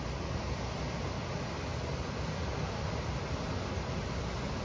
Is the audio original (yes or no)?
yes